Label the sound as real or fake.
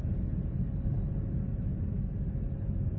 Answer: real